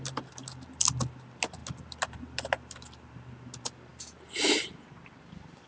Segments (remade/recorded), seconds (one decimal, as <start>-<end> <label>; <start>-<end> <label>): 0.0-5.7 recorded